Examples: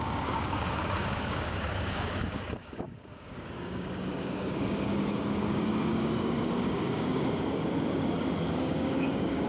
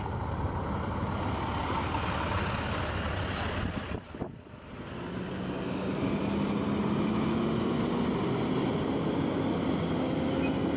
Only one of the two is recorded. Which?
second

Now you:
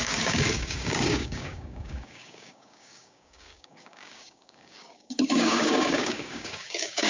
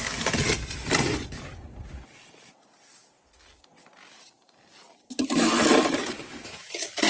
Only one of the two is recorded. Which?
second